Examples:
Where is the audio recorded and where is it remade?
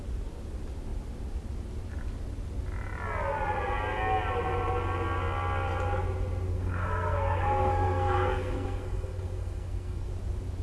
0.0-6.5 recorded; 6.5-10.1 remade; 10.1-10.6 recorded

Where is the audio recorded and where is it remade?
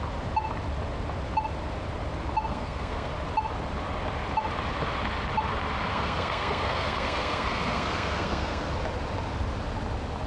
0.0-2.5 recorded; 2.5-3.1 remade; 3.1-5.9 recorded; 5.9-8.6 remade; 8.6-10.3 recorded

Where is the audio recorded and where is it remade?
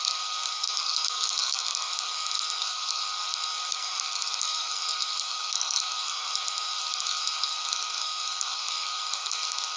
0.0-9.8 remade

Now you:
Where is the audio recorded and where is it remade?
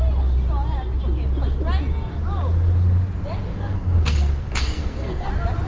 0.0-3.5 recorded; 3.5-5.3 remade; 5.3-5.7 recorded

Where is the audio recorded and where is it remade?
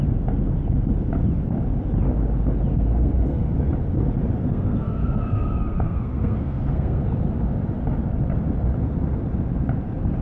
0.0-2.7 recorded; 2.7-3.5 remade; 3.5-4.4 recorded; 4.4-7.0 remade; 7.0-10.2 recorded